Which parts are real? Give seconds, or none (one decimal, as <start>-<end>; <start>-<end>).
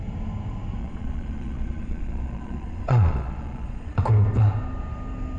0.0-0.8; 4.0-5.4